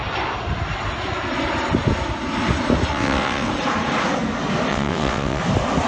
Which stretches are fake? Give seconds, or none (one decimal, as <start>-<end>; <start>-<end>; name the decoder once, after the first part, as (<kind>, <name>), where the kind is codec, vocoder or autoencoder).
2.9-3.5 (vocoder, WaveNeXt); 4.7-5.4